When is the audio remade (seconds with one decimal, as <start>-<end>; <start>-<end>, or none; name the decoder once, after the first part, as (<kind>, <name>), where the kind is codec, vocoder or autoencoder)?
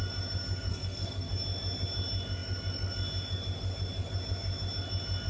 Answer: 0.7-1.3 (codec, SNAC)